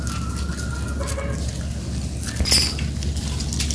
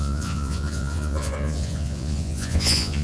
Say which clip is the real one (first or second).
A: first